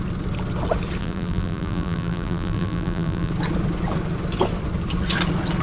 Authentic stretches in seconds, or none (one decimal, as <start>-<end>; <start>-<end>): 0.0-1.0; 3.3-5.6

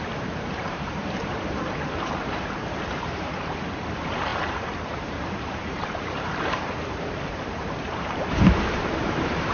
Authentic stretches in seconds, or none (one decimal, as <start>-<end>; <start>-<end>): none

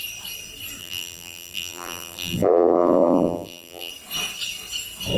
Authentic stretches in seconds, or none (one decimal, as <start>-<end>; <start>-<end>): 0.0-0.8; 3.9-5.2

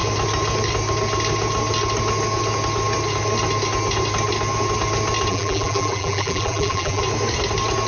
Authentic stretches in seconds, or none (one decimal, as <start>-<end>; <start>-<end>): 0.0-5.3; 7.0-7.9

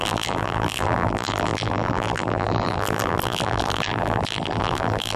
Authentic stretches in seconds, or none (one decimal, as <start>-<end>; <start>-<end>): none

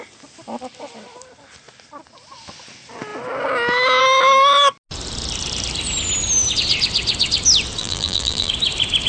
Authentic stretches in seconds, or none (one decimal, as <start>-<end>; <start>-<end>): 0.0-7.8; 8.5-9.1